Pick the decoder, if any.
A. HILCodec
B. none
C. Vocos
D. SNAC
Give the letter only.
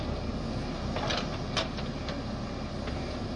B